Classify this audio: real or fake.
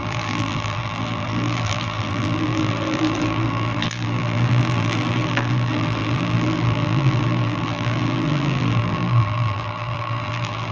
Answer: fake